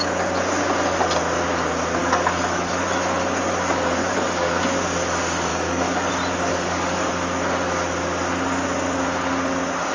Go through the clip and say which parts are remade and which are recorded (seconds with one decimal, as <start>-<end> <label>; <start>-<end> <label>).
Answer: 0.0-2.0 recorded; 2.0-2.7 remade; 2.7-4.0 recorded; 4.0-4.6 remade; 4.6-5.5 recorded; 5.5-6.1 remade; 6.1-6.5 recorded; 6.5-7.1 remade; 7.1-9.9 recorded